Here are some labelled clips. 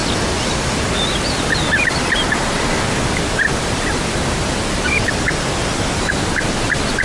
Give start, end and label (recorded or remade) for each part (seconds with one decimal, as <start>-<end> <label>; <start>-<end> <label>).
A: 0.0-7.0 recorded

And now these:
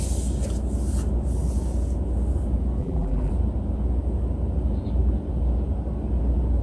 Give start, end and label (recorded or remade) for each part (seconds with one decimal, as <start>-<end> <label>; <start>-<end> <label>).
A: 0.0-2.8 recorded; 2.8-3.3 remade; 3.3-6.6 recorded

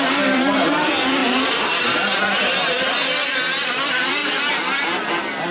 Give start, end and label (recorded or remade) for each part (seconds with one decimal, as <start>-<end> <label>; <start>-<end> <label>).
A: 0.0-4.2 remade; 4.2-5.5 recorded